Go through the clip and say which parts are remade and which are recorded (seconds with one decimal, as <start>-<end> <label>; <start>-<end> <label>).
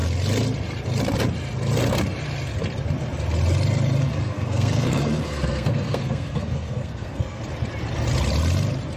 0.0-4.0 recorded; 4.0-7.4 remade; 7.4-9.0 recorded